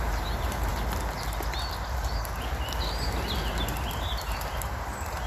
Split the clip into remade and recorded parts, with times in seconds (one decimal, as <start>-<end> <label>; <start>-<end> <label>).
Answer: 0.0-0.7 remade; 0.7-3.9 recorded; 3.9-5.3 remade